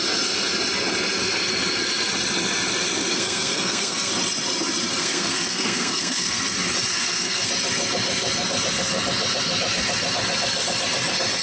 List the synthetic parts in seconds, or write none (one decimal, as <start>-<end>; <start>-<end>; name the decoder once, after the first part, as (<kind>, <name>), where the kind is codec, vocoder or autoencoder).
3.1-4.1 (codec, SNAC); 5.0-6.4; 6.9-7.5